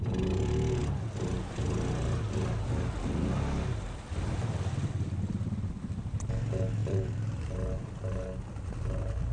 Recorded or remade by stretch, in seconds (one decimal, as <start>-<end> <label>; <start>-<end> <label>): 0.0-6.8 recorded; 6.8-7.5 remade; 7.5-9.3 recorded